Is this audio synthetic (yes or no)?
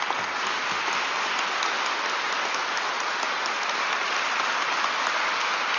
no